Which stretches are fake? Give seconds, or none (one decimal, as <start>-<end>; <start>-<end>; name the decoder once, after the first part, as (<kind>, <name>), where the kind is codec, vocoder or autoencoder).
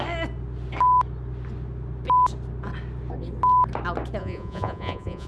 4.2-5.3 (vocoder, Vocos)